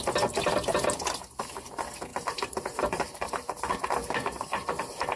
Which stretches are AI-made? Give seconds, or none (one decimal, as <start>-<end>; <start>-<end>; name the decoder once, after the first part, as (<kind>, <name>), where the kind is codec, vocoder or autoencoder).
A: 2.1-3.6 (vocoder, BigVGAN v2); 4.0-5.2

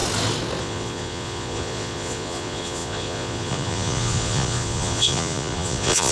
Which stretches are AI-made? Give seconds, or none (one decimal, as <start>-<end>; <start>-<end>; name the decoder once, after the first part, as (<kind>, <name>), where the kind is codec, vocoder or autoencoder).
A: 0.6-6.1 (vocoder, Vocos)

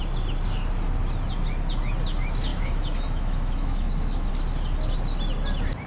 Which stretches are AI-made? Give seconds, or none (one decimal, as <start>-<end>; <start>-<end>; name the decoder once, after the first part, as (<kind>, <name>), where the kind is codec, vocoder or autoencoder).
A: 2.5-4.3 (autoencoder, DAC-VAE)